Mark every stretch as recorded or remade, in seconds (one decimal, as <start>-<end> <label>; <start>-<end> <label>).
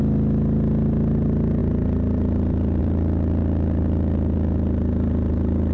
0.0-5.7 recorded